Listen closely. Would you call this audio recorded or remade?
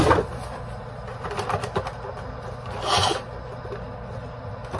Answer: recorded